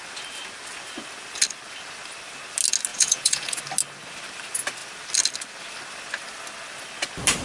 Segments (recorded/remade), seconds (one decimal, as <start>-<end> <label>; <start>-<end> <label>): 0.0-2.9 recorded; 2.9-3.6 remade; 3.6-7.4 recorded